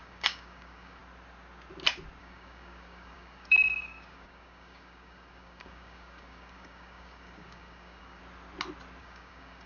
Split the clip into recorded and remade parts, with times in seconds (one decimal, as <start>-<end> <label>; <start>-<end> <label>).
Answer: 0.0-1.0 remade; 1.0-2.2 recorded; 2.2-8.2 remade; 8.2-9.0 recorded; 9.0-9.7 remade